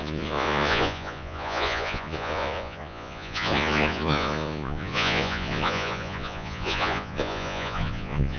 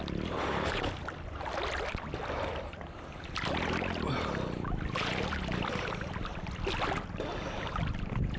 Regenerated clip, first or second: first